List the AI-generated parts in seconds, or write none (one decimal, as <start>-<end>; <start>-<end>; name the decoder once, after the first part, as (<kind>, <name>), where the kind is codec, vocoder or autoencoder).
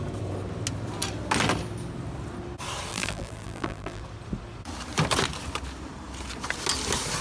2.9-4.0 (vocoder, BigVGAN v2)